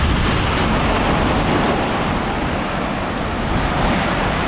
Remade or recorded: recorded